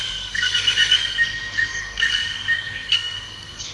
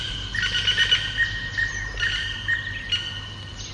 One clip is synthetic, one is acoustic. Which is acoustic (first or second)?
second